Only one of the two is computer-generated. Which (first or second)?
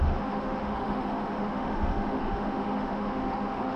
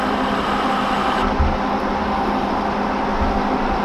first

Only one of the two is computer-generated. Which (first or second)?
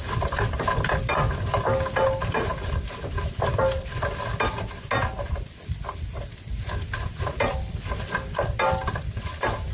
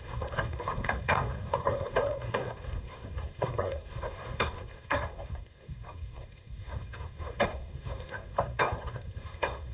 second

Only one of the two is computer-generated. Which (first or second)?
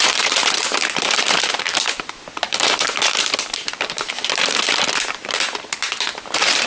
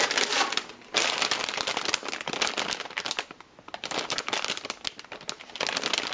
first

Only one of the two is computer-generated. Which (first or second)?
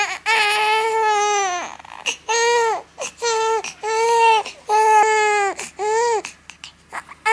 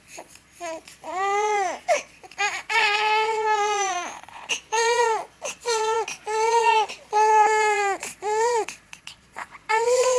second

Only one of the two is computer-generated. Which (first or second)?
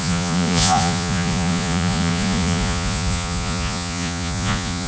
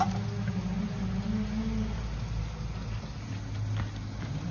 first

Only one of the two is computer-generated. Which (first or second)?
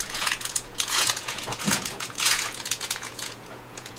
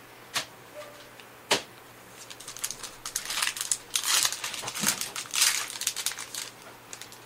first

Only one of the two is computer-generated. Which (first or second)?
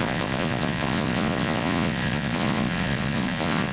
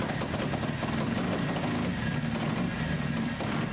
first